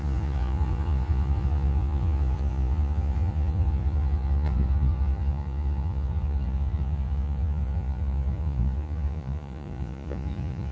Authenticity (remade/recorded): remade